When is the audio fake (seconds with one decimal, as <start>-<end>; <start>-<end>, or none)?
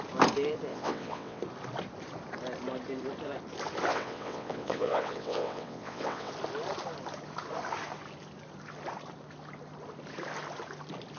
0.7-1.4; 3.9-6.3